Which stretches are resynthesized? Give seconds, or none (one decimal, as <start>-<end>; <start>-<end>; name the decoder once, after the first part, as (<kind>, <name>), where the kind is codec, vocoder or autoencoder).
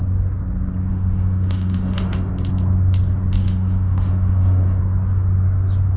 0.9-2.3 (autoencoder, DAC-VAE); 3.4-4.8